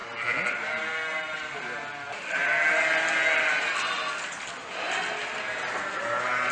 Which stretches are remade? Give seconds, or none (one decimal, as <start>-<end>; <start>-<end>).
none